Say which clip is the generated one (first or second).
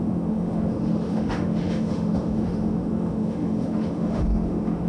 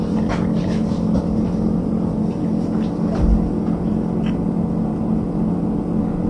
first